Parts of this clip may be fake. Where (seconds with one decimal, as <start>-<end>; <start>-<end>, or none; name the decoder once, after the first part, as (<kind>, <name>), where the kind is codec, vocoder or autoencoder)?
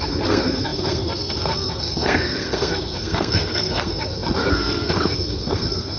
0.0-6.0 (codec, SNAC)